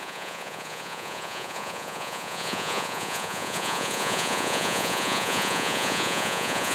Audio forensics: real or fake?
fake